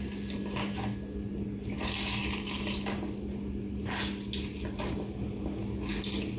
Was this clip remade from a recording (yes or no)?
no